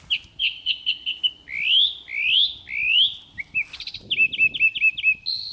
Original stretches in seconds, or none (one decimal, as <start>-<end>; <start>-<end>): 0.0-0.4; 1.2-5.5